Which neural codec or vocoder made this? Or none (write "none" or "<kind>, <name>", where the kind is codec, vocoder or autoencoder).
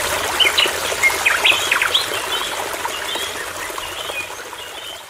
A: none